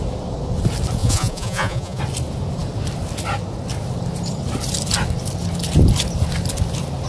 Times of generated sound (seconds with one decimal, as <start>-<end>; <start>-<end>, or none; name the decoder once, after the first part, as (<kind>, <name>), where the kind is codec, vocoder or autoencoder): 1.0-2.0 (vocoder, Vocos)

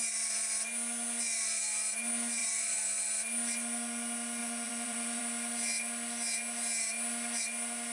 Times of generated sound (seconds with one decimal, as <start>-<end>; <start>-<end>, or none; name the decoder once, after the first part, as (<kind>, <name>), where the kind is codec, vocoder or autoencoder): 2.4-3.1 (vocoder, Vocos); 4.4-5.2

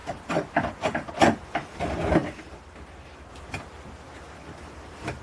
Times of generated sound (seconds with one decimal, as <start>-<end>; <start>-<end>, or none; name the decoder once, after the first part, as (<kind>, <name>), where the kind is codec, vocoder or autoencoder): none

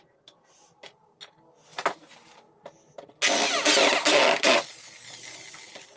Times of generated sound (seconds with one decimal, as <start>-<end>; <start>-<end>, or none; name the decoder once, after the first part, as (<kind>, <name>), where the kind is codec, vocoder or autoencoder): none

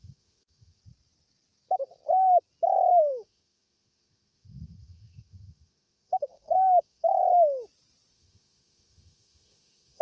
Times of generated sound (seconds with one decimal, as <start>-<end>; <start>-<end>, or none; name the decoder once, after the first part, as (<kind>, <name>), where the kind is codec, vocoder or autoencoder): 0.0-0.8 (autoencoder, DAC-VAE); 3.1-7.2; 8.1-10.0

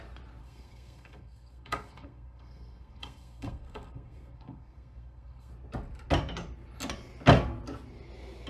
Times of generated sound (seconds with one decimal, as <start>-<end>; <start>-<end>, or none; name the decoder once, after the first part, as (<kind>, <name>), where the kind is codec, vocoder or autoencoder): 0.4-5.5 (codec, SNAC)

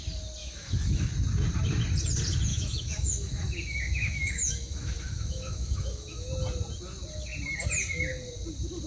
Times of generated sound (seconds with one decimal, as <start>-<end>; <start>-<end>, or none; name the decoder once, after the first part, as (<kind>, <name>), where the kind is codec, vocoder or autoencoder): 0.4-1.1 (autoencoder, DAC-VAE); 2.5-6.3

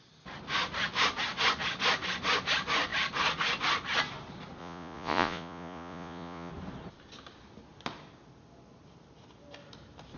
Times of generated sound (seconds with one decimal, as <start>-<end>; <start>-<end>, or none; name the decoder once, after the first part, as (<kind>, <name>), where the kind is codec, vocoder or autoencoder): 4.6-6.5 (vocoder, Vocos)